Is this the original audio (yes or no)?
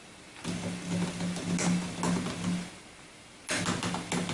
yes